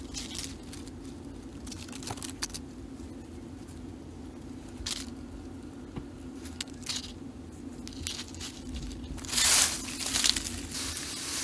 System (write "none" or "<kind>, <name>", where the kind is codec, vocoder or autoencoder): none